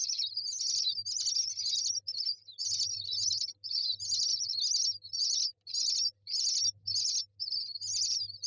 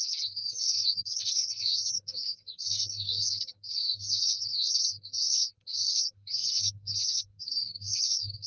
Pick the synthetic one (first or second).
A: second